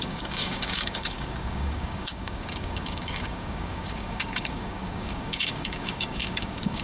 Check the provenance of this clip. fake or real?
fake